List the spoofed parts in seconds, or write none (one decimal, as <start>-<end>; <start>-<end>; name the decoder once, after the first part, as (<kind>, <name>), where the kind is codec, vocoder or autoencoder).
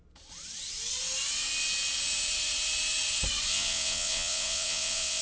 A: 3.5-5.2 (vocoder, WaveNeXt)